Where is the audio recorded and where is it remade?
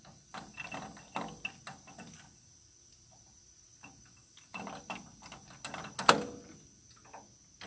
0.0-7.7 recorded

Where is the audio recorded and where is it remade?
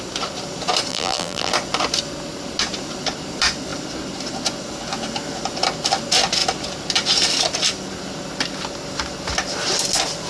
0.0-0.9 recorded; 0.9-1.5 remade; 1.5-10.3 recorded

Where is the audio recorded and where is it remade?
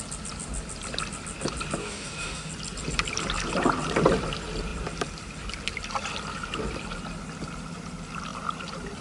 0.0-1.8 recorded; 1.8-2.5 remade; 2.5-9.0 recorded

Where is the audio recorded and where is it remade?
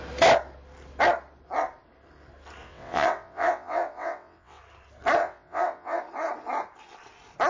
0.0-2.6 recorded; 2.6-4.6 remade; 4.6-5.2 recorded; 5.2-6.0 remade; 6.0-7.5 recorded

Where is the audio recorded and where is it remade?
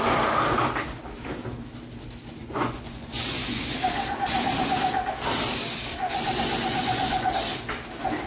0.0-2.4 recorded; 2.4-3.8 remade; 3.8-6.0 recorded; 6.0-7.3 remade; 7.3-8.3 recorded